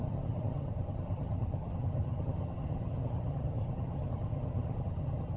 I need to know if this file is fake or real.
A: fake